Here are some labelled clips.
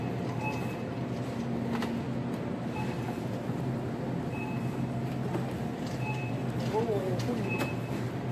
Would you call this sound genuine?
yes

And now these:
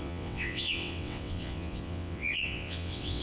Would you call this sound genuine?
no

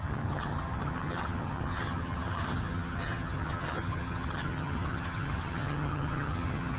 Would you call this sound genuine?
no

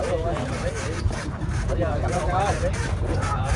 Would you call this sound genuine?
no